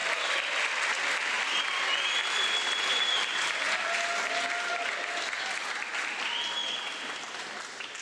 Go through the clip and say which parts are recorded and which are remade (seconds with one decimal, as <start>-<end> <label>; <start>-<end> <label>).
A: 0.0-8.0 recorded